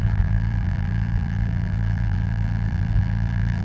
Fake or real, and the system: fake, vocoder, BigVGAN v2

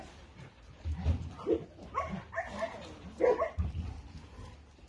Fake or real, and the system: real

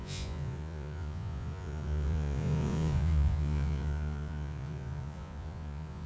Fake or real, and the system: fake, vocoder, Vocos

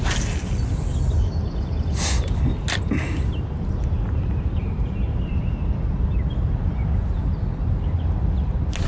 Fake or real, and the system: real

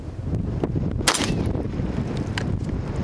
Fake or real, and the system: real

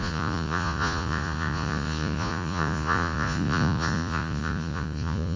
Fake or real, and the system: fake, vocoder, Vocos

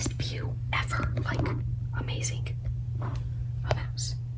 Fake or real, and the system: real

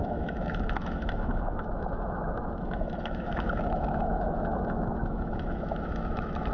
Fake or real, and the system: fake, autoencoder, DAC-VAE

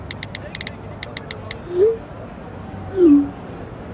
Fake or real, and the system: real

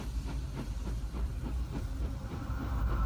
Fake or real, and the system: fake, vocoder, BigVGAN v2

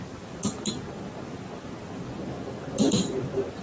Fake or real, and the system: real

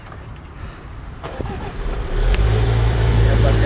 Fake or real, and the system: fake, vocoder, BigVGAN v2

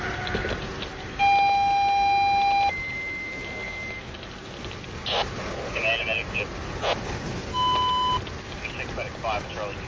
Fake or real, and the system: real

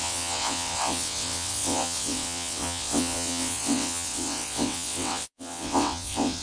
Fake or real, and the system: fake, vocoder, WaveNeXt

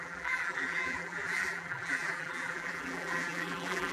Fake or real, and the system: fake, vocoder, BigVGAN v2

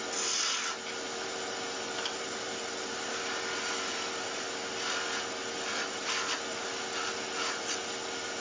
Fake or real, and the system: real